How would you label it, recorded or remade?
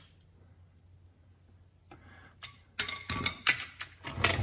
recorded